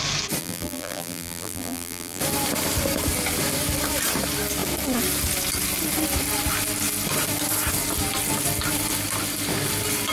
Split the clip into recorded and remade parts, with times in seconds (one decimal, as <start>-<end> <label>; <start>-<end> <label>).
0.0-0.4 recorded; 0.4-2.2 remade; 2.2-10.1 recorded